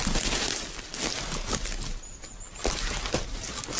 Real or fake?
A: real